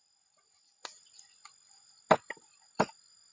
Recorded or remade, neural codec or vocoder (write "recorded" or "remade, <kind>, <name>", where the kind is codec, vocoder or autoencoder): recorded